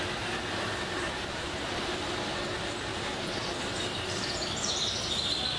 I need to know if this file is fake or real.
real